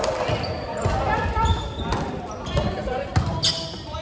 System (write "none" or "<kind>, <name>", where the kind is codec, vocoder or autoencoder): none